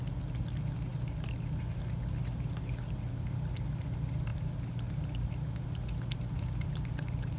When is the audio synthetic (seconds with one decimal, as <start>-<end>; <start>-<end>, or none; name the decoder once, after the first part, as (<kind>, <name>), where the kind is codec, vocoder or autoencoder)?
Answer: none

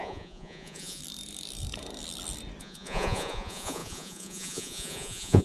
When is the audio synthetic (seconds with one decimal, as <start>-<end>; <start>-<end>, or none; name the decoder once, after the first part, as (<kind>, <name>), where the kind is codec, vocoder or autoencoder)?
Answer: 0.0-1.0 (vocoder, Vocos); 2.6-5.4

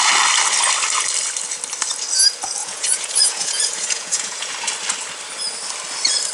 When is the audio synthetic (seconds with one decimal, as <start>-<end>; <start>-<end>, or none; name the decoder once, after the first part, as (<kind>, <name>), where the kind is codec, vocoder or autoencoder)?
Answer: 2.6-4.5 (vocoder, Vocos)